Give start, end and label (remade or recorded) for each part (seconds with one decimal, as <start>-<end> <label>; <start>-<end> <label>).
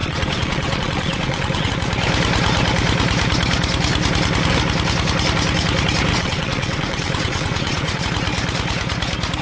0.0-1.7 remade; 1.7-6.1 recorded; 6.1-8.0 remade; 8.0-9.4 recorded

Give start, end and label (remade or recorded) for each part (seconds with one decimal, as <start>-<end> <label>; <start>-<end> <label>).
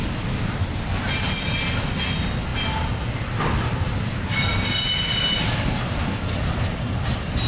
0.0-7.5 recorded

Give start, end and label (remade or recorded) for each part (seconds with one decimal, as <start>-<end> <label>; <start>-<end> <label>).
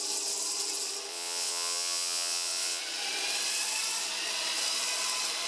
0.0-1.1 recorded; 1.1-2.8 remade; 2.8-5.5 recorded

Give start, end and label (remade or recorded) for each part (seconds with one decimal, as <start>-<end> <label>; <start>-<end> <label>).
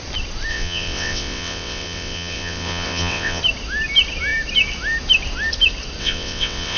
0.0-0.5 recorded; 0.5-3.4 remade; 3.4-6.0 recorded; 6.0-6.8 remade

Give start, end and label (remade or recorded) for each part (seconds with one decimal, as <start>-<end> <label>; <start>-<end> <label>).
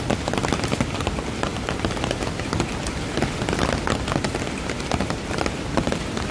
0.0-6.3 recorded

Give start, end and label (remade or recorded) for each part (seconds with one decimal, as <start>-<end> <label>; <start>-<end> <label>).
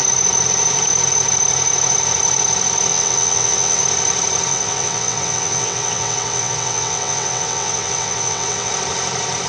0.0-2.9 recorded; 2.9-3.8 remade; 3.8-4.5 recorded; 4.5-8.7 remade; 8.7-9.5 recorded